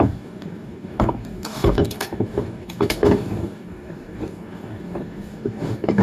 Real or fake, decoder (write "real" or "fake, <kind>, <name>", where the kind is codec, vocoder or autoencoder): fake, codec, DAC